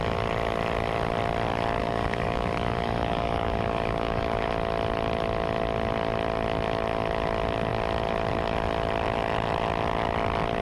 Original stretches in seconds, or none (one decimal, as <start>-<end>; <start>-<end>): 0.0-1.8; 4.5-10.6

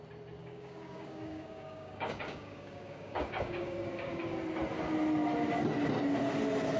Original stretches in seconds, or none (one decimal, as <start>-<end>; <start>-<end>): 0.0-0.4; 4.2-6.8

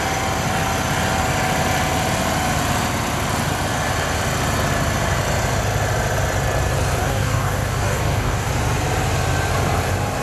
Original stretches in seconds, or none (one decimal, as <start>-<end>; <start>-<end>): 0.0-7.0; 8.5-10.2

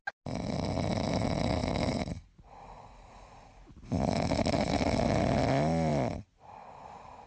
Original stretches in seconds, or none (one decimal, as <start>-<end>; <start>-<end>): 0.0-7.3

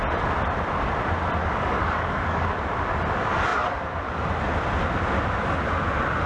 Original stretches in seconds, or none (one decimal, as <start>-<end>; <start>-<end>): 0.0-1.4; 2.5-6.3

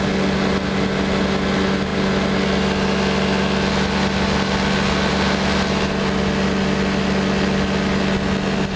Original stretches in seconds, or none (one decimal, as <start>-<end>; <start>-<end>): 0.0-8.8

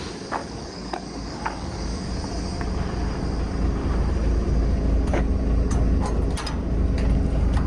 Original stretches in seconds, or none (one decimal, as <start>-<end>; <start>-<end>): 0.0-0.4; 2.1-7.7

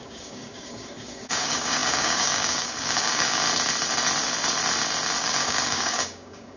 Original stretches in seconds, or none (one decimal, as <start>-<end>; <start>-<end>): 3.4-5.2